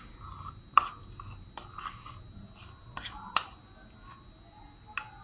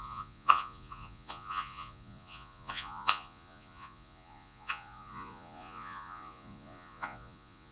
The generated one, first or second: second